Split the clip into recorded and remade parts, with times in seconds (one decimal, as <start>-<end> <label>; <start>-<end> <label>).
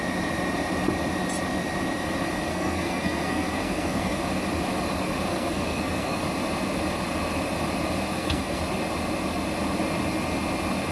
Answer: 0.0-2.5 recorded; 2.5-4.2 remade; 4.2-5.3 recorded; 5.3-6.2 remade; 6.2-8.1 recorded; 8.1-8.6 remade; 8.6-10.9 recorded